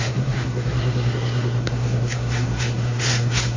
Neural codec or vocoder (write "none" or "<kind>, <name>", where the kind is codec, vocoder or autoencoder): codec, SNAC